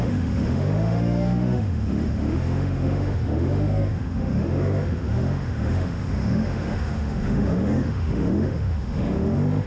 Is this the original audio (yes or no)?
no